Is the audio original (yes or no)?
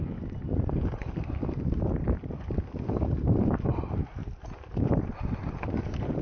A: yes